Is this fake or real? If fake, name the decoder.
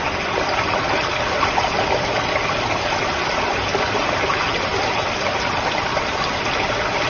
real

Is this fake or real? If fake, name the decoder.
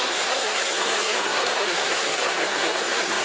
fake, codec, SNAC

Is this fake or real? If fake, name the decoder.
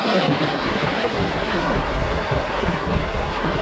fake, codec, SNAC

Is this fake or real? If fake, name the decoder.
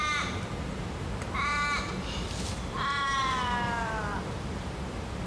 real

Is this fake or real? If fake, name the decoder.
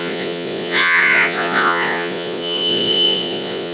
fake, vocoder, Vocos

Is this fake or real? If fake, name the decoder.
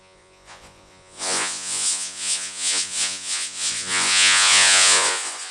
fake, vocoder, Vocos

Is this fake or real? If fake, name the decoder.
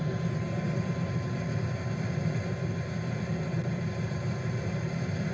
real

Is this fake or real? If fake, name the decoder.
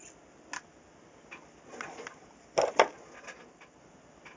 real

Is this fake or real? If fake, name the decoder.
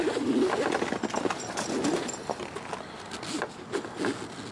real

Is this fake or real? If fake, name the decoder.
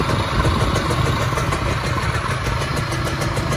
real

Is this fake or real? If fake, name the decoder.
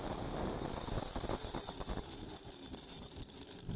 real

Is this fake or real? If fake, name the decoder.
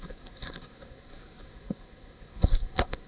fake, codec, SNAC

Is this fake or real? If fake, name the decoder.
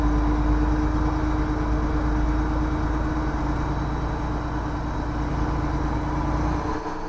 real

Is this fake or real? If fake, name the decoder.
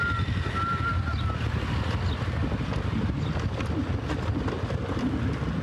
real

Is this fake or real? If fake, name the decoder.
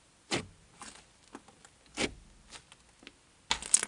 real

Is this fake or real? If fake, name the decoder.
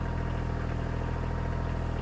real